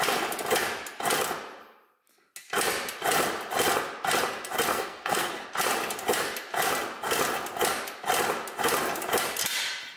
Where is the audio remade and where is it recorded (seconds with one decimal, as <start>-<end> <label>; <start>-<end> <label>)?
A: 0.0-4.7 recorded; 4.7-5.3 remade; 5.3-10.0 recorded